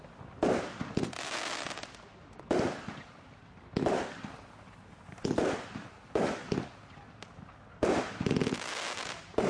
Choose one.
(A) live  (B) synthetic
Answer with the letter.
A